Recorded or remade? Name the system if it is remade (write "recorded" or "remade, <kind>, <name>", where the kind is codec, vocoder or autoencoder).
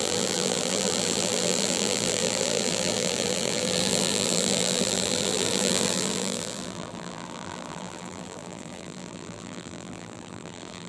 remade, vocoder, BigVGAN v2